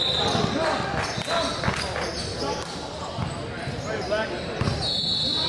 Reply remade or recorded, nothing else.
recorded